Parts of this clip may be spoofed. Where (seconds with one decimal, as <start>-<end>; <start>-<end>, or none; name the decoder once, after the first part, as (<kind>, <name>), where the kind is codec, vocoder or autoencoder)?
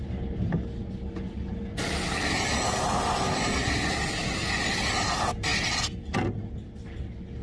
none